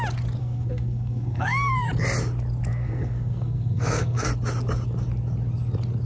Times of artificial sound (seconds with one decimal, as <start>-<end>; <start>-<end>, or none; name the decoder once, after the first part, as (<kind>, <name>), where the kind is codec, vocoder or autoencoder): 0.4-1.9 (codec, SNAC); 2.7-4.3